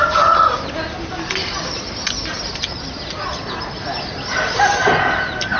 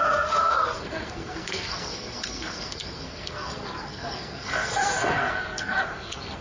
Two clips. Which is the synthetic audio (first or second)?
second